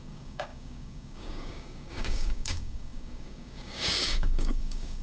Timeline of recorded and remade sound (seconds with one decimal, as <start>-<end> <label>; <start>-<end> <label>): 0.0-5.0 remade